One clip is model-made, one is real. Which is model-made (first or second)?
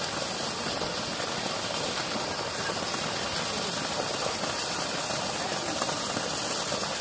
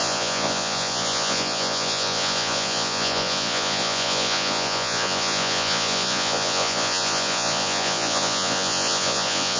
second